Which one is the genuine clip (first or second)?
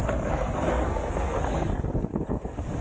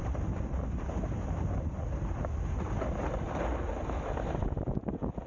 second